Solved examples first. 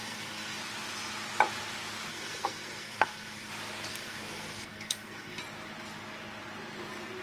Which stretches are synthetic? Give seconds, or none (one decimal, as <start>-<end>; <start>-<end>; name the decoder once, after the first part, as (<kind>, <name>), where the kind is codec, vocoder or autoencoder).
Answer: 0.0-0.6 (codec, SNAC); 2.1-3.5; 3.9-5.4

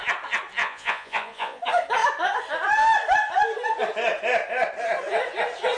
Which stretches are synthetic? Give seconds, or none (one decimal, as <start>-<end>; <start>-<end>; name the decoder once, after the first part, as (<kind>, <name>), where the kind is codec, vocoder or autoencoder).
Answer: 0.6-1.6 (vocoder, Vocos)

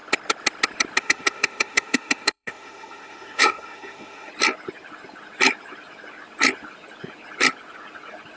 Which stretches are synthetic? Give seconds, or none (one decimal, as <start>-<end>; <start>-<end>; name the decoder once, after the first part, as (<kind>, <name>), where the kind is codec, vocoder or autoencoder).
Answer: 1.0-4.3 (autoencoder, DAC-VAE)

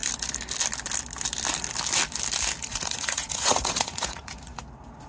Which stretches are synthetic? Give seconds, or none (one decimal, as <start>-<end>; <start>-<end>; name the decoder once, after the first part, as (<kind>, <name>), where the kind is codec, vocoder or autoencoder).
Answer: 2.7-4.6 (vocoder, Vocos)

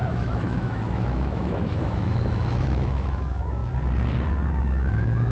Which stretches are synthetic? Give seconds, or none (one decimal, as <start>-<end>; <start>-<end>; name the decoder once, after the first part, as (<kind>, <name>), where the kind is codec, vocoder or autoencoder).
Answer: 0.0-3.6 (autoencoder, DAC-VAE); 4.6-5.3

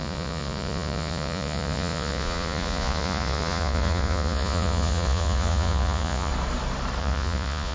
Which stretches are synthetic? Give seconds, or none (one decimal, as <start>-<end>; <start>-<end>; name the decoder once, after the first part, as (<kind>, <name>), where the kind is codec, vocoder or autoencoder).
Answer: 0.0-6.3 (vocoder, Vocos); 7.0-7.7

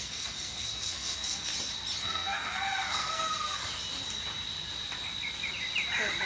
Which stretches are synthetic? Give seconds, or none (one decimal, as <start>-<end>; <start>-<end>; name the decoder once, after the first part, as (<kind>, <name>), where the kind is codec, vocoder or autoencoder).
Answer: 0.0-1.5 (codec, SNAC); 2.0-3.6